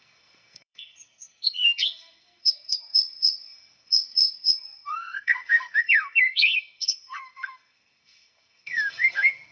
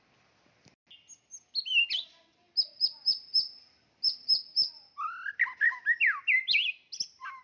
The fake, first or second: first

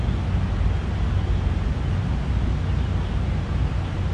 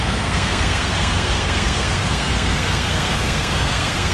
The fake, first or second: second